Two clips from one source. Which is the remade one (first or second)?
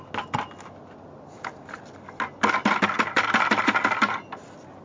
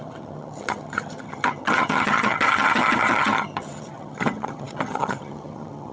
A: second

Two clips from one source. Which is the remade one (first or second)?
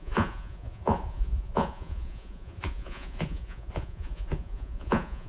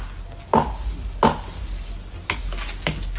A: first